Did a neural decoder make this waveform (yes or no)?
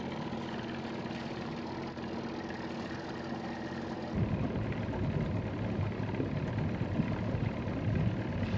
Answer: no